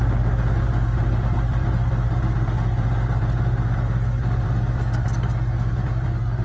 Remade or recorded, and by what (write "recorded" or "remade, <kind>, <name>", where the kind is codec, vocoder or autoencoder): recorded